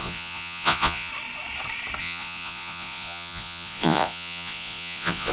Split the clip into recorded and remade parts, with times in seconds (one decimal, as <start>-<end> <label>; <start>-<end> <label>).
0.0-1.1 remade; 1.1-2.0 recorded; 2.0-5.3 remade